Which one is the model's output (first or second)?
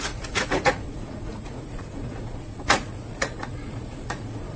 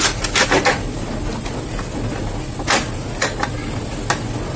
first